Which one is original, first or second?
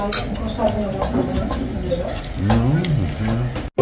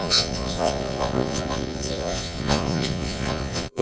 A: first